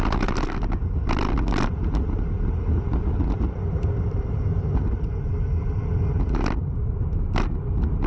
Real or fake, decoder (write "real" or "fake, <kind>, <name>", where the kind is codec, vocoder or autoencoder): real